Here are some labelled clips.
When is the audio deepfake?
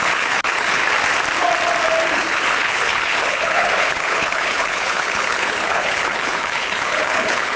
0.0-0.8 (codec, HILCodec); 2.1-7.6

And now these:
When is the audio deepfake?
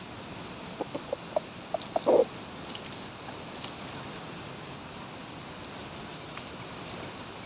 none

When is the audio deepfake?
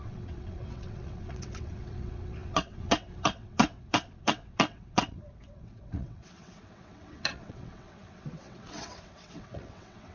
0.0-10.1 (vocoder, WaveNeXt)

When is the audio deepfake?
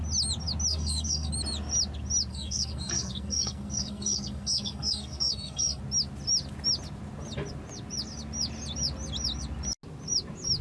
0.7-1.3 (codec, SNAC); 2.3-5.8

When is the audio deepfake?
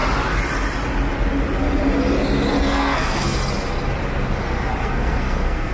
2.6-3.4 (codec, SNAC); 4.8-5.7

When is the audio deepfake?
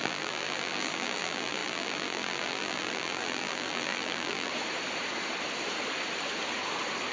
0.0-4.5 (vocoder, BigVGAN v2)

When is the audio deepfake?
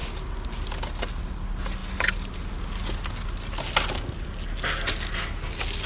none